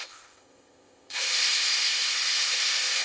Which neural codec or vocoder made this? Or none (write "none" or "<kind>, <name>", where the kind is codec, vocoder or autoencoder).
codec, ZipCodec